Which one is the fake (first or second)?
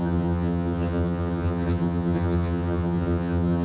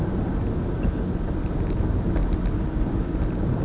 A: first